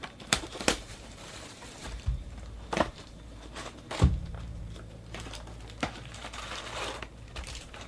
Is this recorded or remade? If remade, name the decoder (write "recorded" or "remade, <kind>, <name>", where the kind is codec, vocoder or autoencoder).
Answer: remade, vocoder, BigVGAN v2